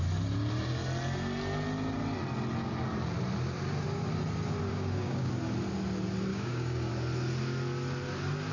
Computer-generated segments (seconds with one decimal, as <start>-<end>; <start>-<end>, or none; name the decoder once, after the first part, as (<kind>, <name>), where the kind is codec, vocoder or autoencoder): 4.7-5.3 (codec, DAC); 6.3-6.9